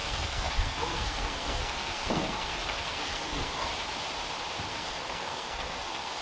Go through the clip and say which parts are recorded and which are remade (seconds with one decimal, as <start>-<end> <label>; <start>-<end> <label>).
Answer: 0.0-3.7 remade; 3.7-4.7 recorded; 4.7-6.2 remade